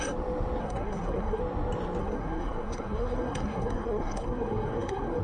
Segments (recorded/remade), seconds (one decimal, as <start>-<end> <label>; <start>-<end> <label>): 0.0-0.6 recorded; 0.6-1.4 remade; 1.4-2.0 recorded; 2.0-5.2 remade